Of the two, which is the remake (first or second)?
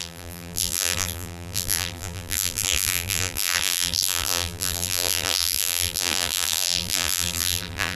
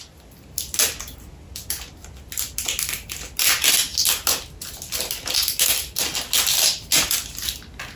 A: first